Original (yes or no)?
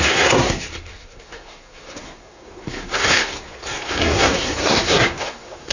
no